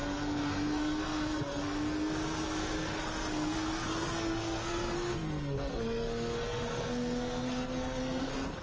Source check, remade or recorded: remade